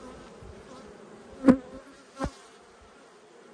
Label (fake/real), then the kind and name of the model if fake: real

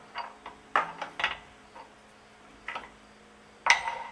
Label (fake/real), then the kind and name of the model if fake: real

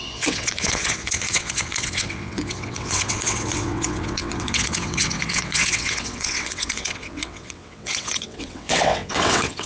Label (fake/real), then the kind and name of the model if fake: fake, vocoder, WaveNeXt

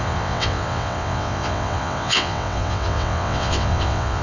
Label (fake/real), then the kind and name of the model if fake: fake, vocoder, WaveNeXt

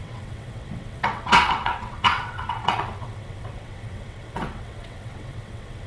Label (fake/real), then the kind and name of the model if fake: fake, vocoder, WaveNeXt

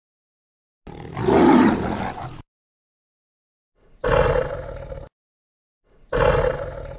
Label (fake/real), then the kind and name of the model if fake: real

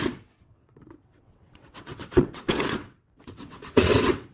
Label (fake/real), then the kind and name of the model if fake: fake, vocoder, WaveNeXt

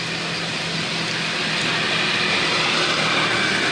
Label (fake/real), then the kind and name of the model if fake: real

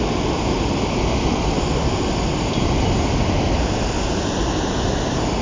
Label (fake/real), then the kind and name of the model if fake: real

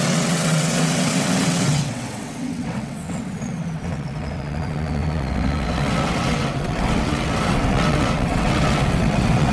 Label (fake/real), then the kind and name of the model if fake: fake, vocoder, WaveNeXt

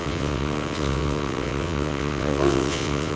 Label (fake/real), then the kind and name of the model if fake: fake, vocoder, WaveNeXt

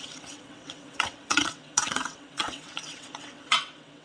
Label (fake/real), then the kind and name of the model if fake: fake, vocoder, WaveNeXt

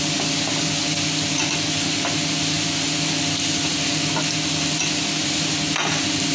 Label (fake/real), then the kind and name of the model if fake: real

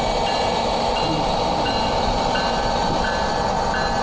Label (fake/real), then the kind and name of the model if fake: real